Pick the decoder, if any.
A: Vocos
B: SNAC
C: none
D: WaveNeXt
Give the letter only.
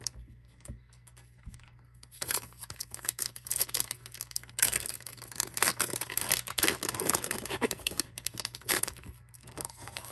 B